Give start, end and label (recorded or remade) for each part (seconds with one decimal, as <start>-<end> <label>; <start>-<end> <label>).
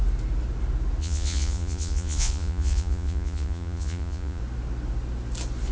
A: 0.0-1.0 recorded; 1.0-4.4 remade; 4.4-5.7 recorded